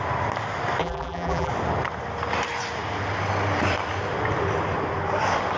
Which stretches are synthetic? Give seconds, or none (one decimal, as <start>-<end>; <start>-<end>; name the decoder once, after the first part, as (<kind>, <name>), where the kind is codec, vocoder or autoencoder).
0.8-1.5 (vocoder, BigVGAN v2)